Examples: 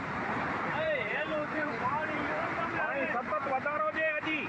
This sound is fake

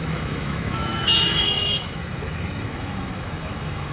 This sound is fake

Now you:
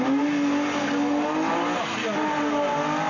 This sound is real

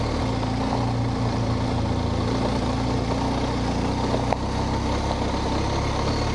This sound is real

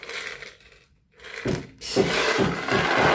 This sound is real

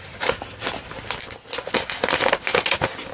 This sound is real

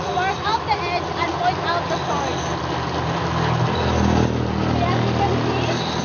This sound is real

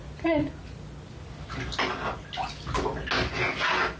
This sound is real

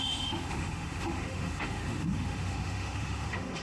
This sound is fake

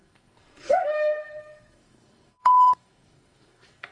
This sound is fake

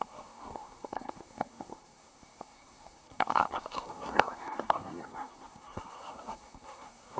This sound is fake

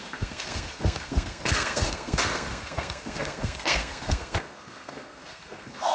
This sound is fake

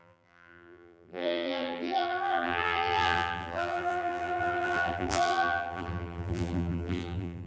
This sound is fake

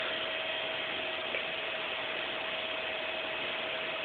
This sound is real